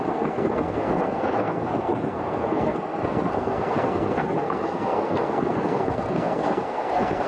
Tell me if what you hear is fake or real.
fake